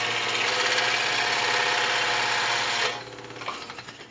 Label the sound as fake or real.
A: real